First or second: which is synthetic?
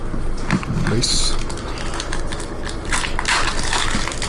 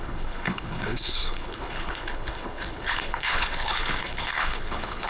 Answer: second